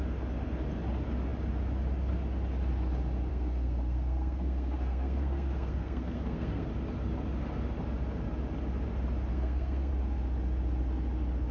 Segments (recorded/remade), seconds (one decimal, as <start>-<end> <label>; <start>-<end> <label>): 0.0-3.3 recorded; 3.3-6.7 remade; 6.7-9.3 recorded; 9.3-9.9 remade; 9.9-11.5 recorded